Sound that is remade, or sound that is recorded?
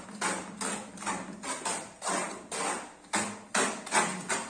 recorded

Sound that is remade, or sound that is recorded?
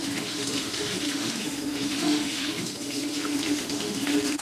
remade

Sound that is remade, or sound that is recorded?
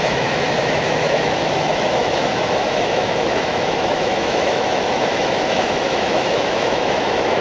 remade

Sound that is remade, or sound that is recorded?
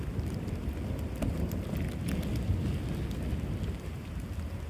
recorded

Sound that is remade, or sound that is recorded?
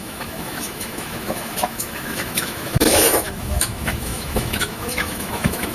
remade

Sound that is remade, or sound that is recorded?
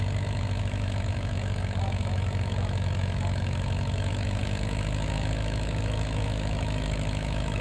remade